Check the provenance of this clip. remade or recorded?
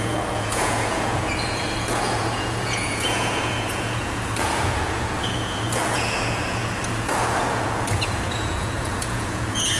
remade